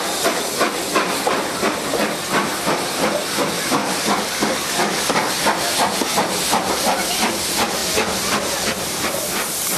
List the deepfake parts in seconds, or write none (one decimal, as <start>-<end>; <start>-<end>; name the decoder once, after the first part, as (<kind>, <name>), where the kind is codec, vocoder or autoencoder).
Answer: 3.8-5.3 (codec, DAC)